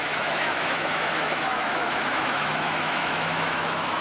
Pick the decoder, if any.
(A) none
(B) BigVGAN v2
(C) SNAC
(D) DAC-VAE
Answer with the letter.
D